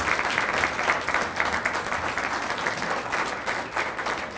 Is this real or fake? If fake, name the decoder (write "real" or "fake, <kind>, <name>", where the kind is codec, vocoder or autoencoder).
real